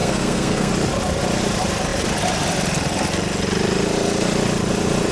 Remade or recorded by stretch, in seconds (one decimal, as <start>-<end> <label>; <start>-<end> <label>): 0.0-0.7 remade; 0.7-5.1 recorded